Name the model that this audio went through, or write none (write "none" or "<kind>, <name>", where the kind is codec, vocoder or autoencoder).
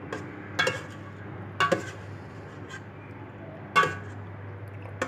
none